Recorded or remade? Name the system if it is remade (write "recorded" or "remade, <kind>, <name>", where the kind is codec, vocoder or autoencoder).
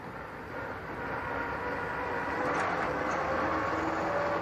recorded